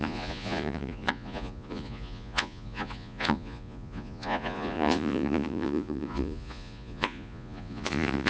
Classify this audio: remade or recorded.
remade